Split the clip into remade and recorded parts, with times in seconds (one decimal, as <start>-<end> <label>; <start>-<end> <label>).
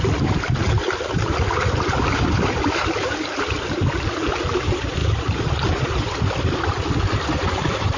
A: 0.0-8.0 recorded